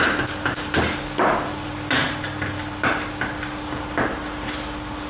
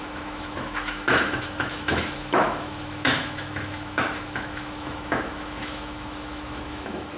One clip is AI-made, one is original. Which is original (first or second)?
first